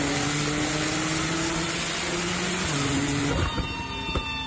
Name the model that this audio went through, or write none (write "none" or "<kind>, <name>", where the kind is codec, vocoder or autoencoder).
none